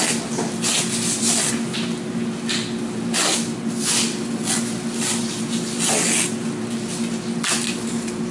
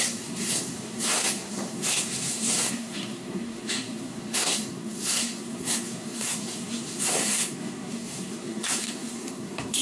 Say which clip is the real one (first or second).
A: first